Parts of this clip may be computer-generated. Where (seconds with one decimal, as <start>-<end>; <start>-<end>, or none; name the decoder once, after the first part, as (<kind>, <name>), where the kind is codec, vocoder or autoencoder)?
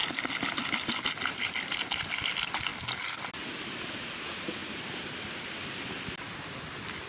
0.0-0.7 (vocoder, BigVGAN v2); 4.6-5.3